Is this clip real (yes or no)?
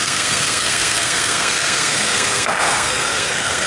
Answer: no